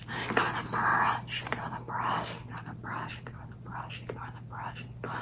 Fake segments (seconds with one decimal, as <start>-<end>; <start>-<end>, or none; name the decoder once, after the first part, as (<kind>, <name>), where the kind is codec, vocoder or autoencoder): 0.9-3.8 (vocoder, BigVGAN v2)